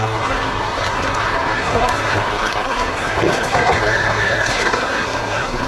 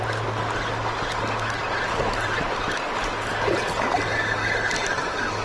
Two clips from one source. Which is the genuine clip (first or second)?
second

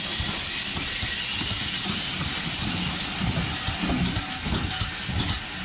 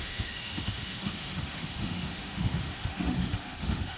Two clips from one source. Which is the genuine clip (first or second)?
first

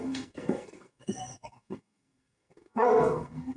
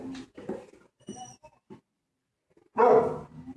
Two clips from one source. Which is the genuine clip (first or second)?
second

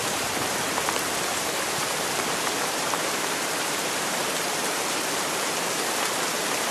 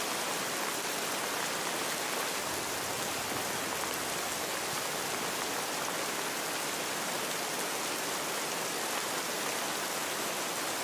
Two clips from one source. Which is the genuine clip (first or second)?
second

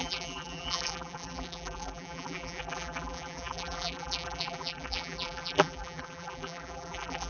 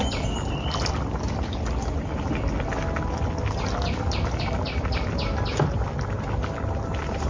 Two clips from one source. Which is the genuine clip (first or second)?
second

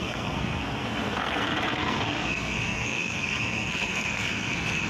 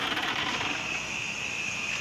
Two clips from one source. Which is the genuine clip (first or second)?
second